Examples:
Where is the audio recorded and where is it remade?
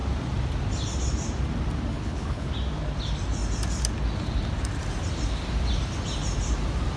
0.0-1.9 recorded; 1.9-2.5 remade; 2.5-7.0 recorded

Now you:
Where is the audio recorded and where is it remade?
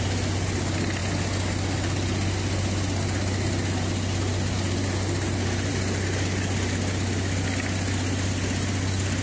0.0-9.2 recorded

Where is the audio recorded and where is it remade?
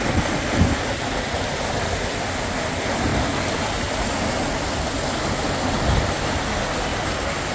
0.0-7.5 recorded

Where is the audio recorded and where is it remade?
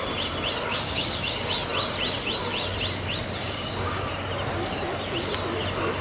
0.0-0.7 recorded; 0.7-1.5 remade; 1.5-3.4 recorded; 3.4-4.1 remade; 4.1-6.0 recorded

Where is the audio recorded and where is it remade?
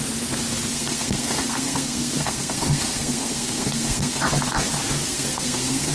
0.0-0.7 recorded; 0.7-4.2 remade; 4.2-5.0 recorded; 5.0-5.9 remade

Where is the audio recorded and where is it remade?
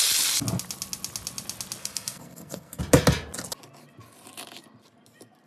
0.0-1.8 recorded; 1.8-2.8 remade; 2.8-5.5 recorded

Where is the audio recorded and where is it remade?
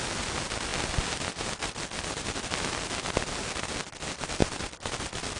0.0-5.4 recorded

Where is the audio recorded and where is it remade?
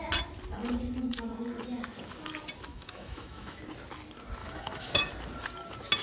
0.0-2.7 recorded; 2.7-3.6 remade; 3.6-4.4 recorded; 4.4-5.1 remade; 5.1-6.0 recorded